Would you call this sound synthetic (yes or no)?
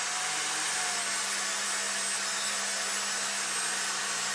no